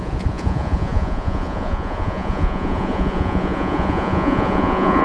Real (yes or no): no